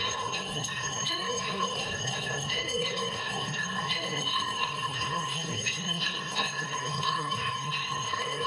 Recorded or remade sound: remade